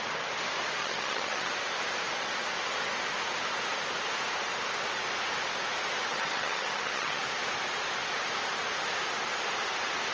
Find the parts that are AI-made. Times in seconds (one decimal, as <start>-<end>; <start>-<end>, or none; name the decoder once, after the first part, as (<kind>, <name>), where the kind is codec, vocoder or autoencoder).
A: 0.8-1.5 (vocoder, HiFi-GAN); 6.1-7.2